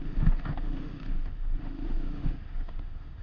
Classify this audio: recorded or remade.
remade